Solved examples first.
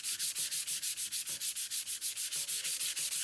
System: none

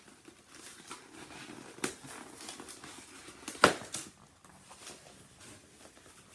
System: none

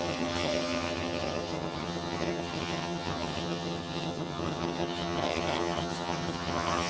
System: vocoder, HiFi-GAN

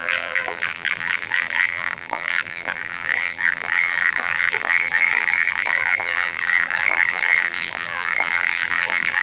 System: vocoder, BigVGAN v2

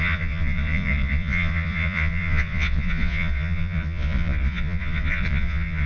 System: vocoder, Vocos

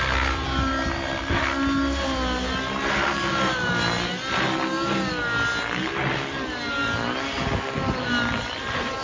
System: none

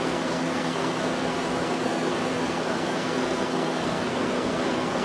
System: codec, SNAC